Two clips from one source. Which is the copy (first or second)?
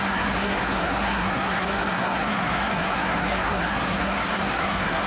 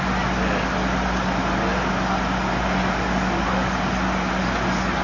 first